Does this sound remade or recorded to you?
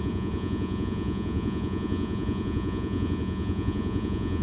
remade